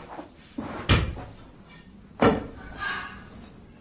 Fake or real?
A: real